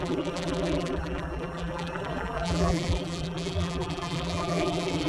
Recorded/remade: remade